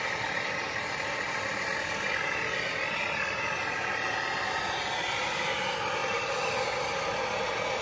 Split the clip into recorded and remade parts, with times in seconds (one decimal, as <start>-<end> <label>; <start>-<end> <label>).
0.0-7.8 recorded

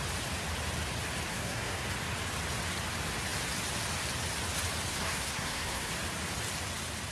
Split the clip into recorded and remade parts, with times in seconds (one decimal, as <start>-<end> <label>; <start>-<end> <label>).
0.0-1.3 recorded; 1.3-1.8 remade; 1.8-4.9 recorded; 4.9-5.9 remade; 5.9-7.1 recorded